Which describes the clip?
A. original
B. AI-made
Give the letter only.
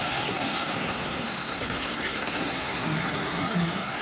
B